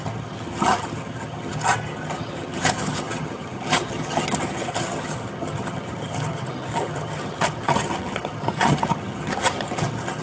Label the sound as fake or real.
fake